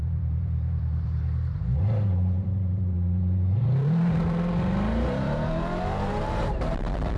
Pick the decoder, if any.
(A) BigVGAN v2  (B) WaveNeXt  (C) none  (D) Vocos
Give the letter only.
A